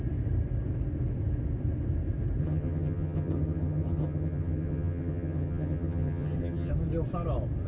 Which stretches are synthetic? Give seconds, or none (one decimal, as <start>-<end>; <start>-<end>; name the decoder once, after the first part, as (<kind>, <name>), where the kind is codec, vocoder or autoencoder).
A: 2.4-6.7 (vocoder, HiFi-GAN)